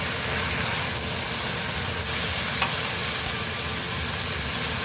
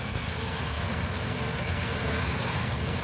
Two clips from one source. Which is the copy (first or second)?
second